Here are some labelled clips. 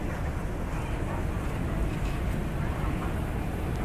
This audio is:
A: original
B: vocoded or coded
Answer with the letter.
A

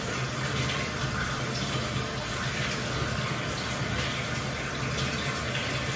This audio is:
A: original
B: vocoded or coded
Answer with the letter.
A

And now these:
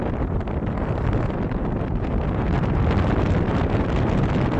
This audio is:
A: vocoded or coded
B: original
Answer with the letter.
B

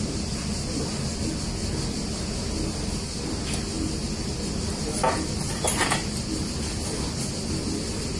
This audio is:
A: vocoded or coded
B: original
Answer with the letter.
B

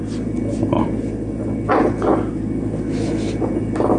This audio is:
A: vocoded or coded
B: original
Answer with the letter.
B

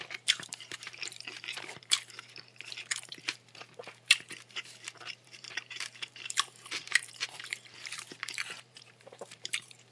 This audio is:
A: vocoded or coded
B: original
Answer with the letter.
A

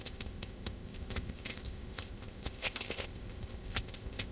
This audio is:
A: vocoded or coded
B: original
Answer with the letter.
A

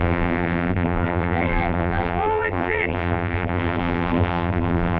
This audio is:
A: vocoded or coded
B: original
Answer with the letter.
A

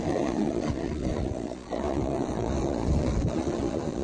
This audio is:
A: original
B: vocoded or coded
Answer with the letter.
B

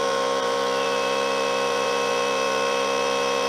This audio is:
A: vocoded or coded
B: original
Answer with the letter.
A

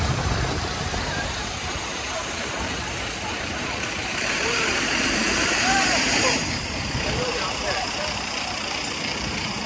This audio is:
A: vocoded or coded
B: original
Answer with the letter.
A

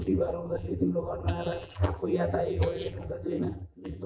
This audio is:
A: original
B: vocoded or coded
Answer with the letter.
B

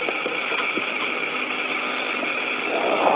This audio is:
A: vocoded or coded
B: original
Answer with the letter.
B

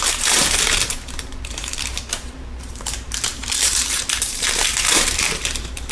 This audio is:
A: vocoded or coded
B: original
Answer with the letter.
A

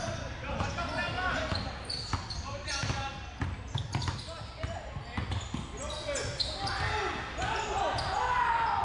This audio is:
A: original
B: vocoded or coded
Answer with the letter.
A